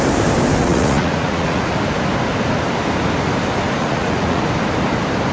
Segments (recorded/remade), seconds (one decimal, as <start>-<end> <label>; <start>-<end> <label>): 0.0-0.6 recorded; 0.6-1.7 remade; 1.7-3.8 recorded; 3.8-4.4 remade; 4.4-5.3 recorded